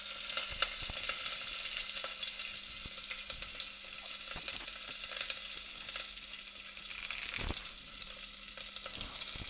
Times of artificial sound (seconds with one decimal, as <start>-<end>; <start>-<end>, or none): 7.6-8.4